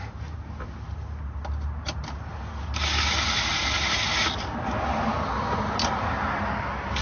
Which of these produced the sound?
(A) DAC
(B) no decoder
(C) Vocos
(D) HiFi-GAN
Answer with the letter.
B